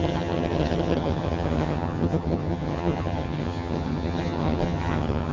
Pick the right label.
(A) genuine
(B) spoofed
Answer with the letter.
B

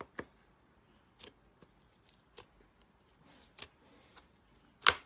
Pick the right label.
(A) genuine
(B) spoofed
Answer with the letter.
A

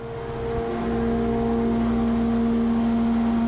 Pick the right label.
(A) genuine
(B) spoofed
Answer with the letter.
A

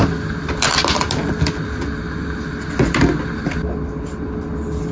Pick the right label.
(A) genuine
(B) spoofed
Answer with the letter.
A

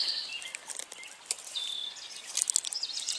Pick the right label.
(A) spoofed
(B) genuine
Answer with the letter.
B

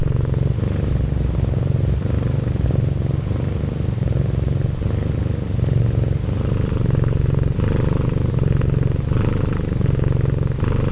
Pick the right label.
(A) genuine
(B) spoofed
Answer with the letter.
A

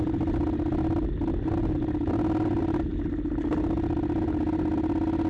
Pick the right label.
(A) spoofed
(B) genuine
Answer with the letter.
B